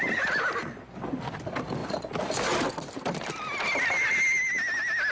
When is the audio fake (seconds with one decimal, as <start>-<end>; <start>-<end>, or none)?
none